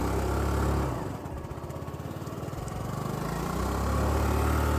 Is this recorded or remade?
recorded